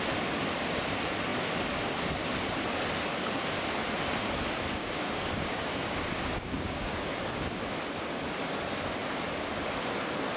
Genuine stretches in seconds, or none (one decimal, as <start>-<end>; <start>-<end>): 0.0-4.8; 7.6-10.4